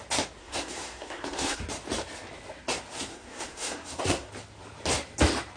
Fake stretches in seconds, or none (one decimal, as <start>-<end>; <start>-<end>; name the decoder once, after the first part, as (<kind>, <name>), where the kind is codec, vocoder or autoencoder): 0.4-1.6 (codec, SNAC); 3.1-4.3